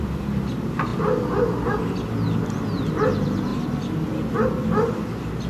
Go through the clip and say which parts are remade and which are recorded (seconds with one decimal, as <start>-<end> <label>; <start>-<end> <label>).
0.0-5.5 recorded